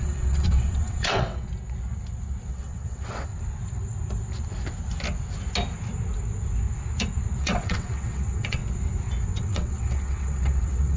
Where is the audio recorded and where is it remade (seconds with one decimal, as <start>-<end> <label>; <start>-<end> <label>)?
0.0-1.5 remade; 1.5-2.5 recorded; 2.5-3.3 remade; 3.3-7.4 recorded; 7.4-8.6 remade; 8.6-9.4 recorded; 9.4-11.0 remade